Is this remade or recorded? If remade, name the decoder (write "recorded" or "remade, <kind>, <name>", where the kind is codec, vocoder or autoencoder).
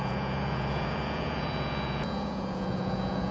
remade, vocoder, Vocos